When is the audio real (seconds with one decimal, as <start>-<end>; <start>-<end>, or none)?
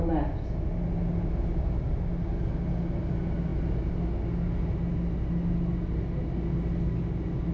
0.0-7.5